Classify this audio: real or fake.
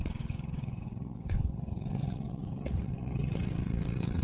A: fake